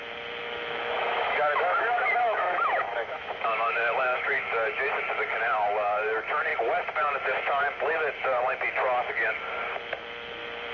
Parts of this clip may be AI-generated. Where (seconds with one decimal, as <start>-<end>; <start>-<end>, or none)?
0.4-4.5